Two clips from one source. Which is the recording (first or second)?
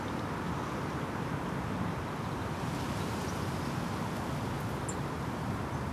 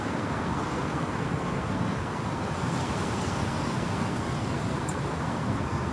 first